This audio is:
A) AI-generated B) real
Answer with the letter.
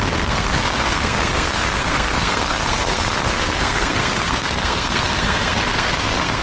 A